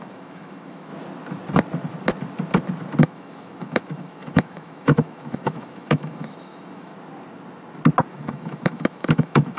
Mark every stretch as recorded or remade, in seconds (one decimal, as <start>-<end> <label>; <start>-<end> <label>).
0.0-0.9 remade; 0.9-3.0 recorded; 3.0-6.9 remade; 6.9-8.1 recorded; 8.1-9.6 remade